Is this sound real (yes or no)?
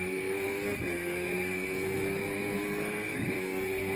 no